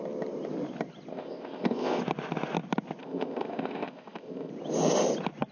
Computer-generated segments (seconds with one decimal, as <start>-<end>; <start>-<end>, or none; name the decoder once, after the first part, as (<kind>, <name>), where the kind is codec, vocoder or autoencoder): 1.1-2.0 (codec, ZipCodec); 3.0-4.5